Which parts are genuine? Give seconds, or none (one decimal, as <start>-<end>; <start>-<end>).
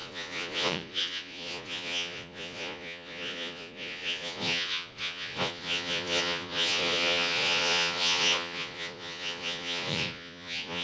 none